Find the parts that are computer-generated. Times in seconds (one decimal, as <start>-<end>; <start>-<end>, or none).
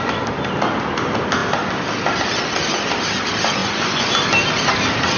3.6-4.1